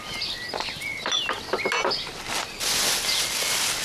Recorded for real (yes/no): yes